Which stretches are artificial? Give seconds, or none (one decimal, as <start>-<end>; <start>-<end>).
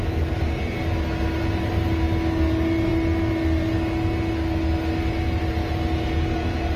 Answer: none